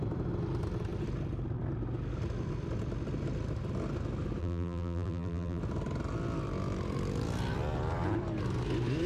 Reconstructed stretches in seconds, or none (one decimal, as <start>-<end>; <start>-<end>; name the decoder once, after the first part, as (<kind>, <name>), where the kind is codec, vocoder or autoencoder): 4.4-5.6 (vocoder, BigVGAN v2)